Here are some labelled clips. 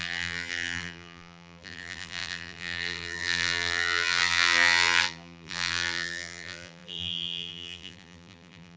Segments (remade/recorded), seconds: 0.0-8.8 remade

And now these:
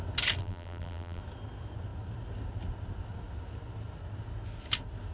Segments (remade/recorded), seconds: 0.0-0.4 recorded; 0.4-1.2 remade; 1.2-5.1 recorded

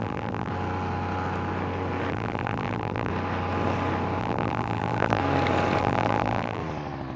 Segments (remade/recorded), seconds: 0.0-0.5 remade; 0.5-2.1 recorded; 2.1-3.1 remade; 3.1-4.2 recorded; 4.2-5.2 remade; 5.2-5.8 recorded; 5.8-6.6 remade; 6.6-7.2 recorded

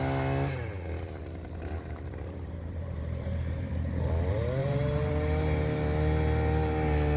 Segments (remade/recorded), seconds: 0.0-1.2 recorded; 1.2-3.9 remade; 3.9-4.6 recorded; 4.6-5.1 remade; 5.1-7.2 recorded

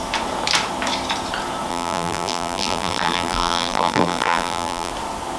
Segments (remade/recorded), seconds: 0.0-1.7 recorded; 1.7-4.9 remade; 4.9-5.4 recorded